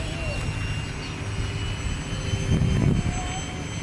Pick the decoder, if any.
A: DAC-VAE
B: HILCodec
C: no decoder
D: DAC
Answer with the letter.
C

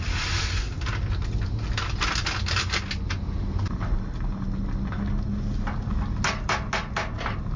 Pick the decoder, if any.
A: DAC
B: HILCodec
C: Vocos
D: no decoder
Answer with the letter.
D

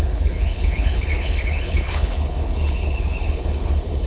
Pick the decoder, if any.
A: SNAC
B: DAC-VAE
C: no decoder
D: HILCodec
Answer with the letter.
D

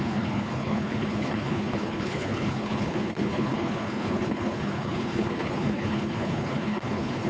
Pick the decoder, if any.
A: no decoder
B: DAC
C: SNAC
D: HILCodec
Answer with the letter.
D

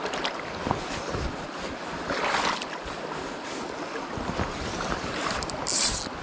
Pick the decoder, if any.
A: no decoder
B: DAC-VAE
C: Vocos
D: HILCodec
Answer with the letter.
A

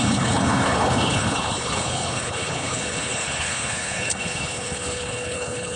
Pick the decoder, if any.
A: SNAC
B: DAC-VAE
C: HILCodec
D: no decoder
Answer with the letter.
C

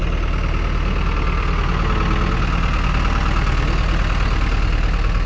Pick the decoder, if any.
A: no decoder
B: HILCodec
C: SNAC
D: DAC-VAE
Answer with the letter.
A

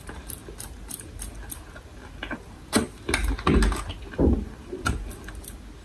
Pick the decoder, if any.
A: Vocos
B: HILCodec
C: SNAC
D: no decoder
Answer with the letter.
D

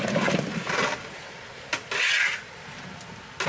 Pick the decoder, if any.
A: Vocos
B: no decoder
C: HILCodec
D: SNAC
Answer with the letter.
B